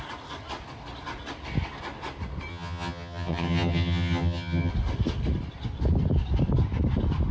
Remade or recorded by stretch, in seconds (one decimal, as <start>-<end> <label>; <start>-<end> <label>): 0.0-2.5 recorded; 2.5-4.7 remade; 4.7-7.3 recorded